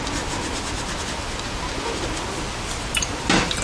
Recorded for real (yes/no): yes